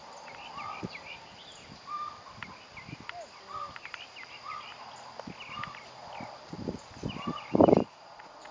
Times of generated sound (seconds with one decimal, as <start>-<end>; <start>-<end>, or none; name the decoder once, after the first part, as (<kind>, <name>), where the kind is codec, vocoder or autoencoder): 7.8-8.5 (vocoder, Vocos)